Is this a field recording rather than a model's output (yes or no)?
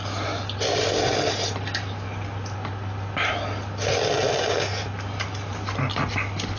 yes